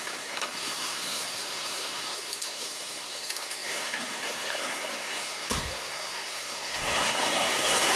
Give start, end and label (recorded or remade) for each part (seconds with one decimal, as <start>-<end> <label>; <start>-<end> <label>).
0.0-8.0 remade